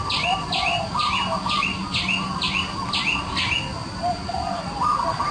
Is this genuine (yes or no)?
yes